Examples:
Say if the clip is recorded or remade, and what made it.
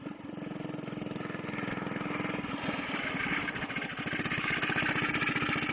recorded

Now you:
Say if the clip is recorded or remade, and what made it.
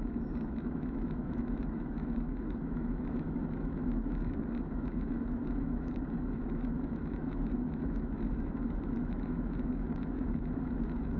remade, autoencoder, DAC-VAE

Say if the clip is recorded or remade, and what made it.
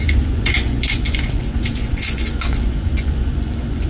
remade, vocoder, Vocos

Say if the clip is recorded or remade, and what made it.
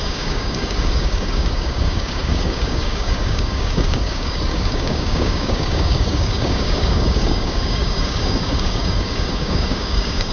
remade, codec, DAC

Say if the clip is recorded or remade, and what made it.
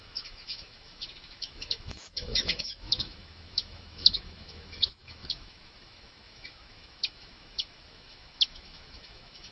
remade, autoencoder, DAC-VAE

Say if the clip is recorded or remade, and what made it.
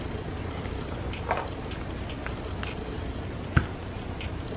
recorded